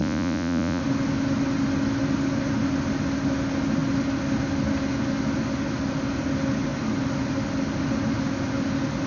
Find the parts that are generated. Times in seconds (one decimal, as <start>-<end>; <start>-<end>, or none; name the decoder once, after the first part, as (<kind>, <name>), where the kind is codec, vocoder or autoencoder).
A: 0.0-0.8 (vocoder, Vocos)